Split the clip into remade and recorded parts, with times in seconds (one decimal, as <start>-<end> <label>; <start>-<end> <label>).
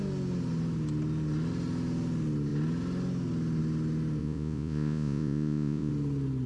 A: 0.0-4.2 recorded; 4.2-5.9 remade; 5.9-6.5 recorded